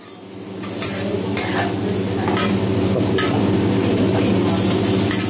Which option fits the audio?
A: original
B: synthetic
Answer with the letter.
A